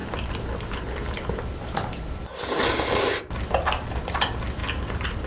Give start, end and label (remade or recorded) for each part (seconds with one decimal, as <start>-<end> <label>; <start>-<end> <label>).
0.0-3.2 remade; 3.2-4.6 recorded; 4.6-5.3 remade